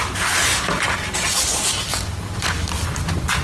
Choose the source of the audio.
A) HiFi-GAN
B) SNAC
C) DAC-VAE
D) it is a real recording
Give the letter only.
D